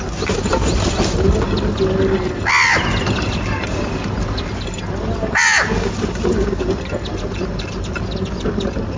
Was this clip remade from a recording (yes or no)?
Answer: no